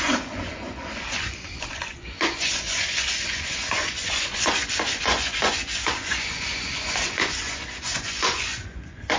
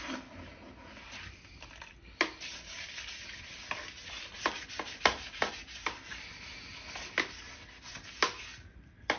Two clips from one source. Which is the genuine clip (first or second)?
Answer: second